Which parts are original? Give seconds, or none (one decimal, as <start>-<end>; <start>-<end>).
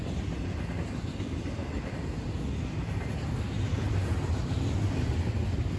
0.0-5.8